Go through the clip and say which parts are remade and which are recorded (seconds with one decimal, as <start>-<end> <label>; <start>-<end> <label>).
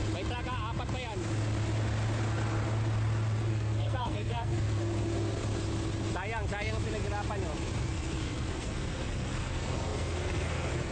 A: 0.0-3.5 recorded; 3.5-4.8 remade; 4.8-7.8 recorded; 7.8-10.9 remade